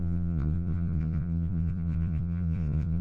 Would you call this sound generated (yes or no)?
yes